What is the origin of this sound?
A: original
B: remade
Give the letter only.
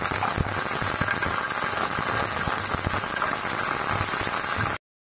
A